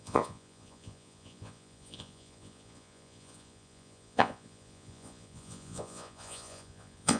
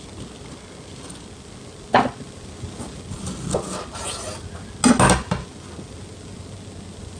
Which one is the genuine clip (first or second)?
second